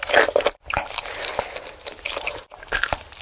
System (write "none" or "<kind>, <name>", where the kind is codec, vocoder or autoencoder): none